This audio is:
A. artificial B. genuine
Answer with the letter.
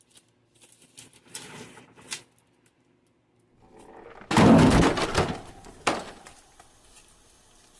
B